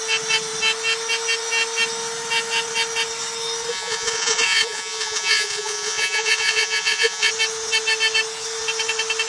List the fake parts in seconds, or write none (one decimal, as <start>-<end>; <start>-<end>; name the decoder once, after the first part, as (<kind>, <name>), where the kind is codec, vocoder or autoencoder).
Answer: 3.7-7.3 (vocoder, Vocos)